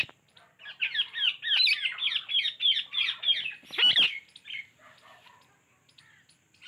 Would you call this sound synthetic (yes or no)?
no